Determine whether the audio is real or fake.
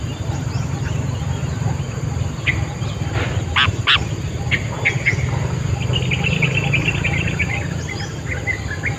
real